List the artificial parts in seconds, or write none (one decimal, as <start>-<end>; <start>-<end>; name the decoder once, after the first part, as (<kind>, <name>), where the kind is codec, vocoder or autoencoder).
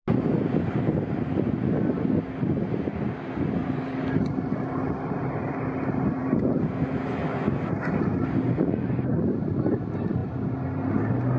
none